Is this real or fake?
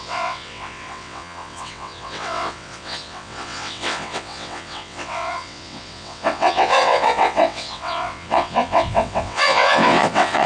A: fake